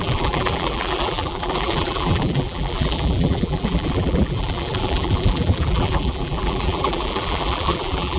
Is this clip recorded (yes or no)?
no